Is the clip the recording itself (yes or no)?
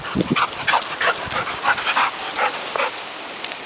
yes